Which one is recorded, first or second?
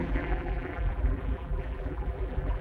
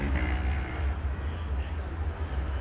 second